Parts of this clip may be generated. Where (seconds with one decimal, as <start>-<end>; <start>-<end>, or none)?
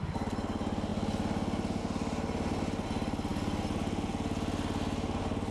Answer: none